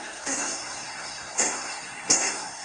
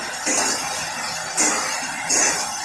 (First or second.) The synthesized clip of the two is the first